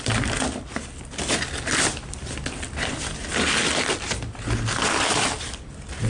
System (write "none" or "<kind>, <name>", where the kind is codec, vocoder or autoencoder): none